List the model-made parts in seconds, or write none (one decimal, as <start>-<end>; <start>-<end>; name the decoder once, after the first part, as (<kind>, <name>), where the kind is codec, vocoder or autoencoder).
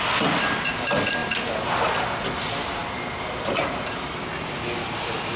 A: none